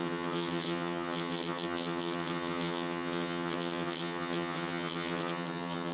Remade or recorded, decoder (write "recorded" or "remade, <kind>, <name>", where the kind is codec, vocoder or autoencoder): remade, vocoder, HiFi-GAN